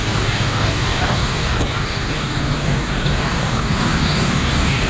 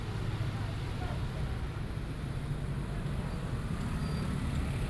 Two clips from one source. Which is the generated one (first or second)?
first